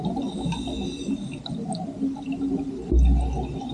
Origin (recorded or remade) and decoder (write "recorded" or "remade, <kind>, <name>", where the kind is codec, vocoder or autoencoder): recorded